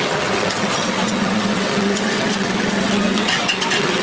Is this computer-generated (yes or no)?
yes